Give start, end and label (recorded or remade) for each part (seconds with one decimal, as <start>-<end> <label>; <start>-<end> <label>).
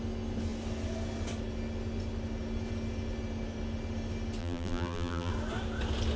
0.0-4.4 recorded; 4.4-5.3 remade; 5.3-6.2 recorded